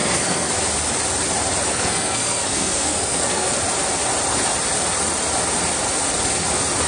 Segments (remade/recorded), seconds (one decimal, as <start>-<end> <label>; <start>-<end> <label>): 0.0-0.5 remade; 0.5-1.7 recorded; 1.7-3.5 remade; 3.5-6.9 recorded